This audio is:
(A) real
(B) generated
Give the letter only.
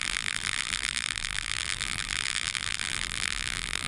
B